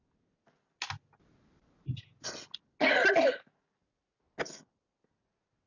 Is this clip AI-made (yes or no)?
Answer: no